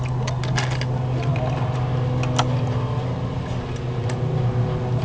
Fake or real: real